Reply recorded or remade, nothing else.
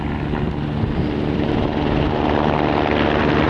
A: recorded